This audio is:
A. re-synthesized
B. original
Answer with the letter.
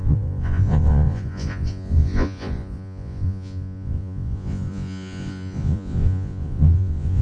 A